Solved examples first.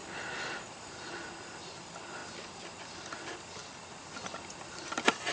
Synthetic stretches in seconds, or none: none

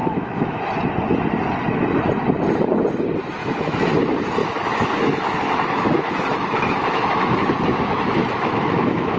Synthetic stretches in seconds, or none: 0.0-0.6 (autoencoder, DAC-VAE); 3.4-3.9; 4.4-9.2

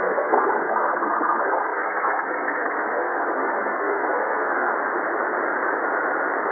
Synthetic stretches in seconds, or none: 0.0-4.7 (codec, SNAC)